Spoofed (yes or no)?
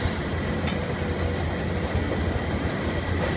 no